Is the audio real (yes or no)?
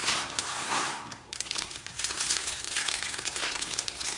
no